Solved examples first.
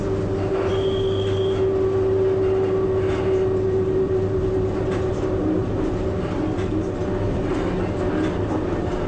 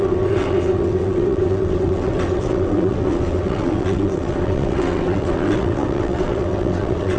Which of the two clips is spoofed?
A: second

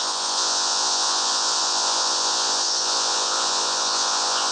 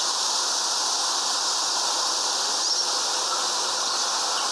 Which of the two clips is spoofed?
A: first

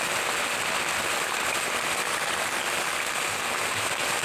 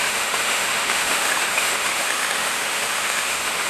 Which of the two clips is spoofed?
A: second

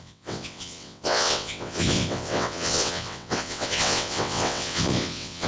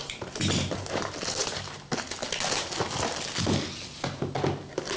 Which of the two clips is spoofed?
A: first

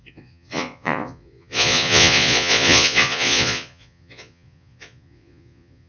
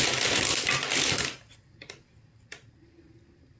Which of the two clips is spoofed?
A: first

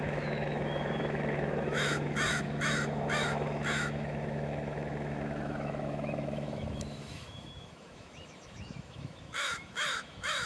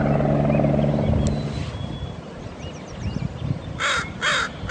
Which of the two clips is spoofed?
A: first